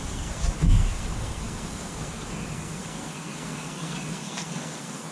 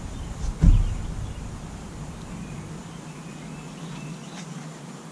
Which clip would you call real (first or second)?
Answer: second